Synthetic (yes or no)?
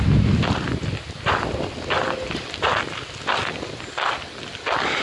no